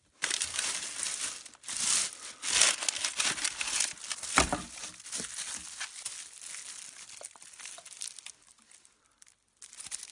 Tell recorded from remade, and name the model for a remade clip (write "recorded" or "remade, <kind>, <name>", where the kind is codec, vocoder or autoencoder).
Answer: recorded